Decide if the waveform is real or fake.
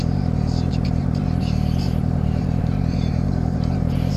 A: fake